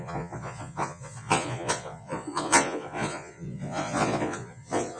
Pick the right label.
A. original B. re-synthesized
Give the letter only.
B